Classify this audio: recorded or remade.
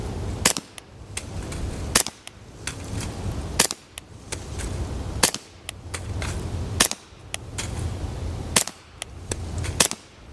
recorded